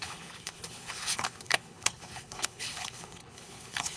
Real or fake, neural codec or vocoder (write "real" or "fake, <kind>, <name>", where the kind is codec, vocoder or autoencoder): fake, codec, HILCodec